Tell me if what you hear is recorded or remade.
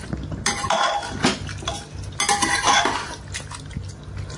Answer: recorded